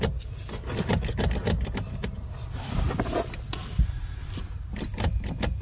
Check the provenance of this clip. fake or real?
real